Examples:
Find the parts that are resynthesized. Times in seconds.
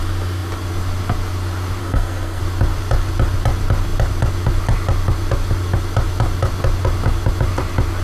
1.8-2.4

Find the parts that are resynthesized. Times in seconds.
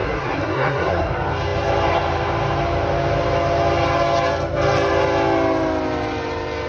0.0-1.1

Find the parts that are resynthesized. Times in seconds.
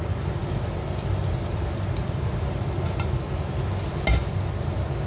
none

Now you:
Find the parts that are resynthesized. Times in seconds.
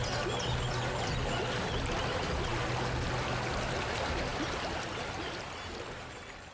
none